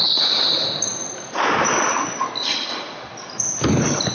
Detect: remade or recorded recorded